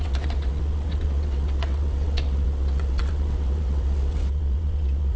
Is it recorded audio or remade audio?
remade